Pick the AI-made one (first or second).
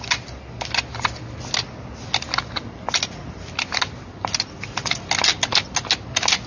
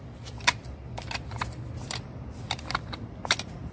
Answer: second